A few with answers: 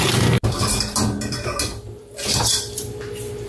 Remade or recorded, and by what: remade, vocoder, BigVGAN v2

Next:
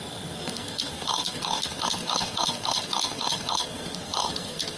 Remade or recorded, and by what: remade, codec, SNAC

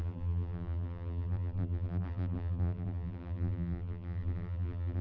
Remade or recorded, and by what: remade, vocoder, BigVGAN v2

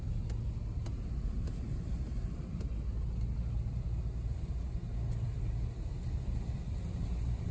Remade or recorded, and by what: recorded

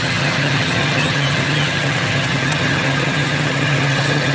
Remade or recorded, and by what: remade, vocoder, HiFi-GAN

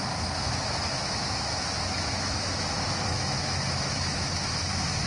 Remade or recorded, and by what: remade, autoencoder, DAC-VAE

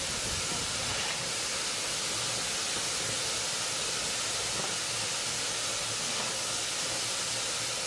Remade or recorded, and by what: recorded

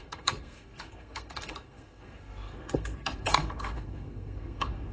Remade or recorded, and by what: remade, codec, SNAC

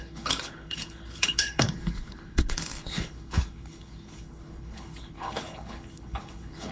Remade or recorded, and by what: remade, codec, HILCodec